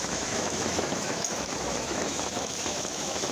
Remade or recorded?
remade